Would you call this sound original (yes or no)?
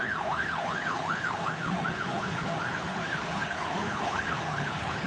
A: no